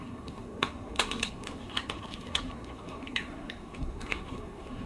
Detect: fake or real fake